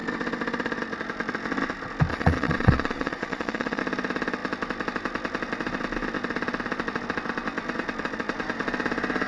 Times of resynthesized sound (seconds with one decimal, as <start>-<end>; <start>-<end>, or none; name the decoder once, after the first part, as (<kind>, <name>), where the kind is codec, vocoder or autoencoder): 2.1-3.8 (vocoder, Vocos)